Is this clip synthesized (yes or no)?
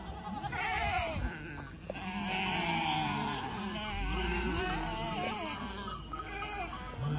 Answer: no